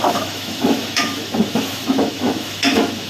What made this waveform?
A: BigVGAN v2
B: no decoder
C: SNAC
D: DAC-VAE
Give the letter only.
D